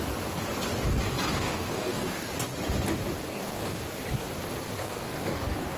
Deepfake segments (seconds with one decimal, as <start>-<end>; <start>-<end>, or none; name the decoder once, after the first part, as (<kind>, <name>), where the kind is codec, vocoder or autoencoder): 1.3-2.3 (codec, DAC); 3.3-3.8; 4.8-5.8